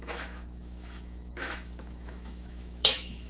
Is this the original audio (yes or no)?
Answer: no